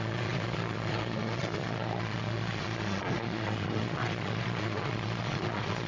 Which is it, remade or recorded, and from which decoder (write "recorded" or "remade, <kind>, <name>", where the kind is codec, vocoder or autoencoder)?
remade, vocoder, Vocos